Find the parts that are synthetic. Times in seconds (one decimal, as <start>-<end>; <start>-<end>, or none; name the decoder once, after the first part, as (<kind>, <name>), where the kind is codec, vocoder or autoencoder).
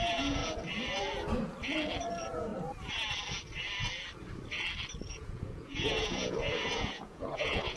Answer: 0.0-0.4 (vocoder, Vocos); 2.1-2.5; 5.1-7.8